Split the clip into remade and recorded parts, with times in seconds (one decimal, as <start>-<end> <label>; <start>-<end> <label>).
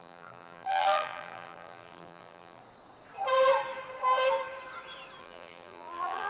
0.0-2.6 remade; 2.6-5.2 recorded; 5.2-6.3 remade